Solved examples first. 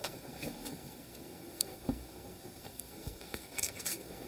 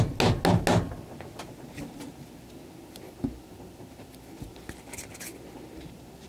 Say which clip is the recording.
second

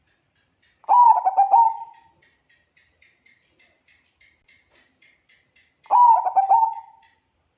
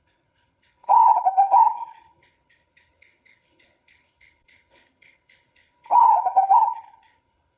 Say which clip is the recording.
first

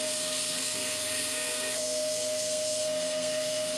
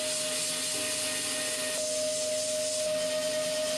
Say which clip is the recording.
second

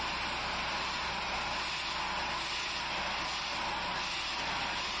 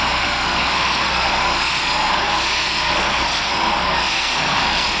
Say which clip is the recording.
first